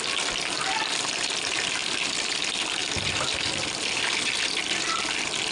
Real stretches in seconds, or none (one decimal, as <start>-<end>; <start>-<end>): 0.0-1.8; 2.4-2.8